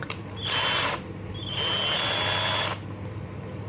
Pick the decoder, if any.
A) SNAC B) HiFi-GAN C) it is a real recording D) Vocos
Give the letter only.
C